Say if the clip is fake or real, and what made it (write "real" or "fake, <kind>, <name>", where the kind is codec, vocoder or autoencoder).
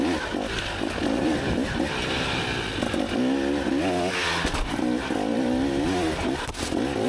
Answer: real